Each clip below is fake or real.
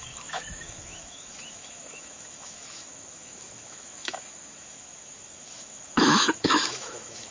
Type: fake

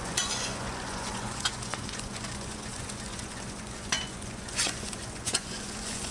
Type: fake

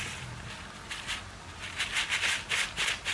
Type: fake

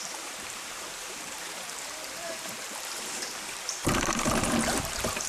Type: fake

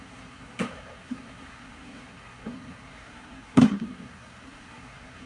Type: fake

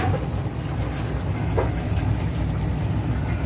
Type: real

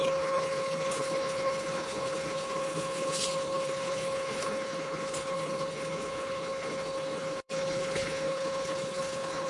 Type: fake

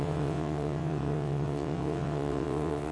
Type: fake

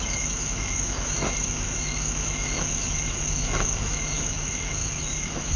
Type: fake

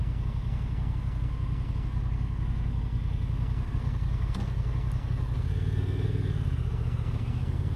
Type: fake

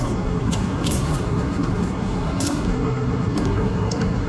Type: fake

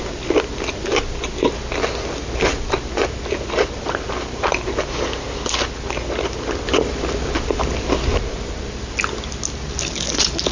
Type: real